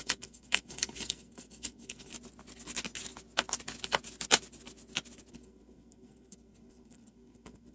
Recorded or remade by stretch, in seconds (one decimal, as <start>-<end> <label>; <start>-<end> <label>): 0.0-2.1 remade; 2.1-5.3 recorded; 5.3-7.7 remade